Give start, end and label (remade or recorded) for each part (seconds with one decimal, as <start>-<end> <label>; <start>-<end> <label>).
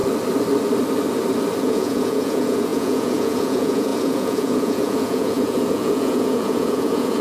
0.0-1.6 recorded; 1.6-7.2 remade